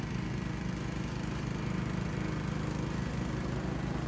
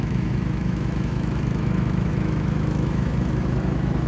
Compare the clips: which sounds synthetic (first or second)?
second